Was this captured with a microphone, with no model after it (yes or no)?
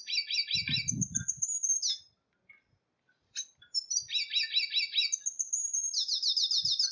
yes